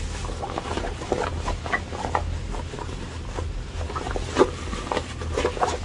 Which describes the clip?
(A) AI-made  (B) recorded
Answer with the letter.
B